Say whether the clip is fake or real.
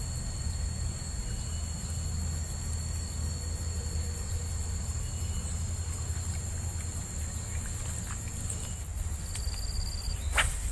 real